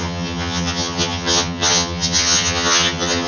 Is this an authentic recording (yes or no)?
no